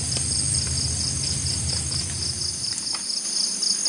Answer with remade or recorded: recorded